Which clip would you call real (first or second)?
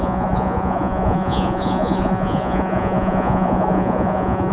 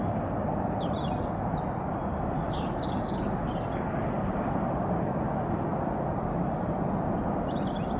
second